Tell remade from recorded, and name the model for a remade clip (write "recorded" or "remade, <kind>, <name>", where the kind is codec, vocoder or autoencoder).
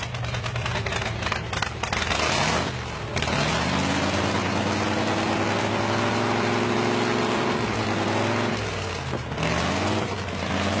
recorded